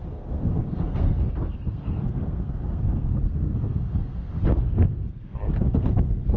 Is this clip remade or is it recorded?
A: remade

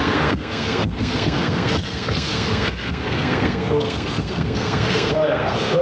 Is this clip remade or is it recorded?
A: remade